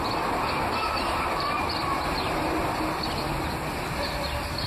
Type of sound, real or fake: real